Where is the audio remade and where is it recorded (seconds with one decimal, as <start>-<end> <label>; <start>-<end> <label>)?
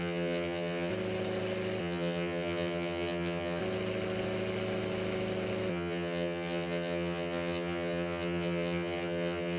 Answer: 0.0-0.9 remade; 0.9-1.8 recorded; 1.8-3.6 remade; 3.6-5.7 recorded; 5.7-9.6 remade